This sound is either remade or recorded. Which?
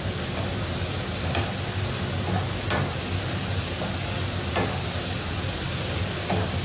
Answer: recorded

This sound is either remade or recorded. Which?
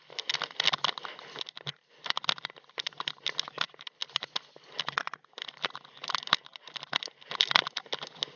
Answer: recorded